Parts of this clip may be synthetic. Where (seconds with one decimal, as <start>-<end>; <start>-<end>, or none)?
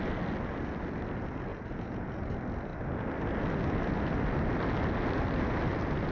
1.5-2.2